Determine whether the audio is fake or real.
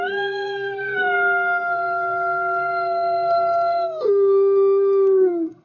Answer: fake